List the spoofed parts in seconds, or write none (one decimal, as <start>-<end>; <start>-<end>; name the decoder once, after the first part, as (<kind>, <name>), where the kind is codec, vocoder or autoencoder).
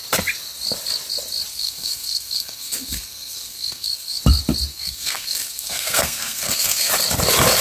1.5-4.2 (codec, SNAC); 4.7-6.9